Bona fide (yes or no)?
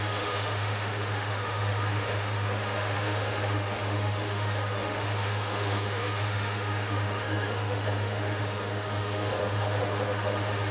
no